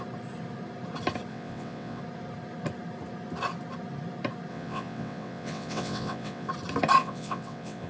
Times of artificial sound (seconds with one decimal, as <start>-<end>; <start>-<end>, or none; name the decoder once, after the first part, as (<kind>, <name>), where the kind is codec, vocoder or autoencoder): 1.3-2.0 (vocoder, WaveNeXt); 4.5-6.5; 7.0-7.9